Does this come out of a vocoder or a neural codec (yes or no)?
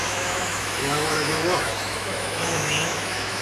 yes